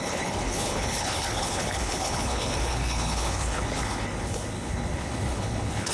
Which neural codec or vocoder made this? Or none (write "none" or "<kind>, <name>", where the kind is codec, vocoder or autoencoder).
codec, HILCodec